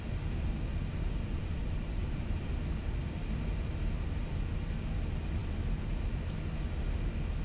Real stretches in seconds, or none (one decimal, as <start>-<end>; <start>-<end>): 0.0-1.3; 2.3-7.4